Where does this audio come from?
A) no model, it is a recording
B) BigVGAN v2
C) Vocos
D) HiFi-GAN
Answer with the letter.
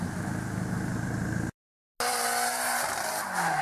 A